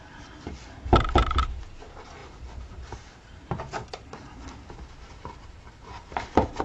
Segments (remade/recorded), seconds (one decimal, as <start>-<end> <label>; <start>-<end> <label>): 0.0-6.6 remade